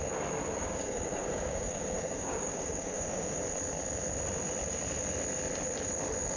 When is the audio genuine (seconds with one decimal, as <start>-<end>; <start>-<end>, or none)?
0.0-0.6; 3.4-6.4